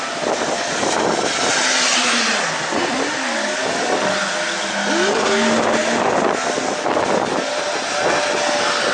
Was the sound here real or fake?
real